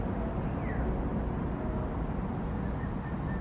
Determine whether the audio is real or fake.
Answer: real